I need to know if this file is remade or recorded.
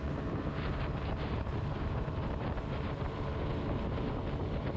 remade